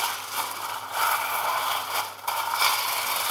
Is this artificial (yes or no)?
no